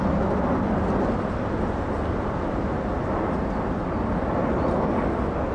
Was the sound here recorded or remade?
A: recorded